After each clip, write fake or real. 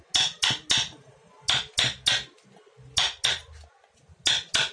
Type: real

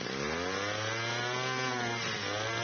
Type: real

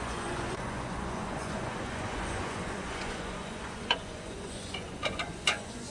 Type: fake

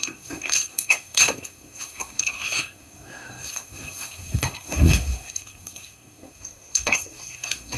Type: fake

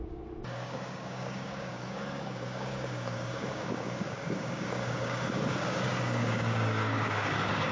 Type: fake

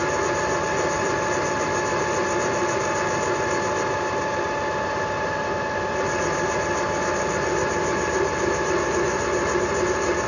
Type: real